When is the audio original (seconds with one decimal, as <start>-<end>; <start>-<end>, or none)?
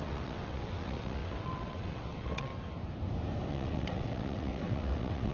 2.5-3.5